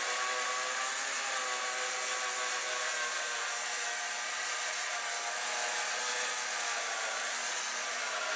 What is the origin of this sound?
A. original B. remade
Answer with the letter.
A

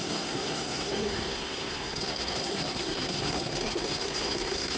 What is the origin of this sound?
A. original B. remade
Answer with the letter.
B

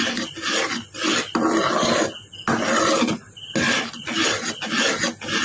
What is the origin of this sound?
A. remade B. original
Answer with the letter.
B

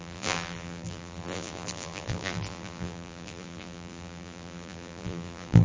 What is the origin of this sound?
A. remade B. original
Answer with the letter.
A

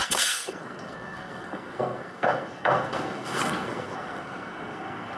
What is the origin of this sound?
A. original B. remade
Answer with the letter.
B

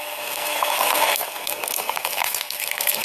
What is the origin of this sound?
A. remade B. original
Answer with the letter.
A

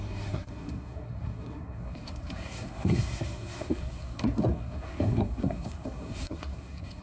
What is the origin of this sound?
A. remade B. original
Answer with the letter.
A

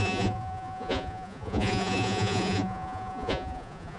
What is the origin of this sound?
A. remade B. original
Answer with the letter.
A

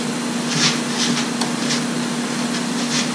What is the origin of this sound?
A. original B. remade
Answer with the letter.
A